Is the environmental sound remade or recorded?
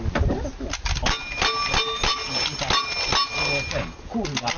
recorded